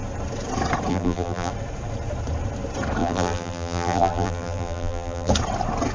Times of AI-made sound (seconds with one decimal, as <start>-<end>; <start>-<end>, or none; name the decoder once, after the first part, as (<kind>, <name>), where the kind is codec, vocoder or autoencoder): 0.9-1.5 (vocoder, BigVGAN v2); 3.0-5.3